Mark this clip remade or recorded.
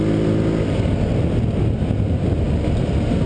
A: recorded